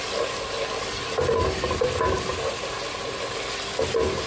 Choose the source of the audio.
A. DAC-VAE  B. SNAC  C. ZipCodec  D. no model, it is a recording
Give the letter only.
D